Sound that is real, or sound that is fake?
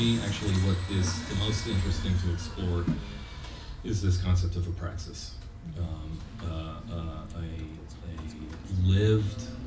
real